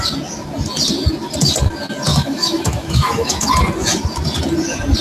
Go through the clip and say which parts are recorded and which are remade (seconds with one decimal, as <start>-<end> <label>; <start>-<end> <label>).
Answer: 0.0-2.1 recorded; 2.1-3.5 remade; 3.5-5.0 recorded